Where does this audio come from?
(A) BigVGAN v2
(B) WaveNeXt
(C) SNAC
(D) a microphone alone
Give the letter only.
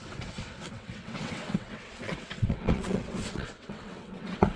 B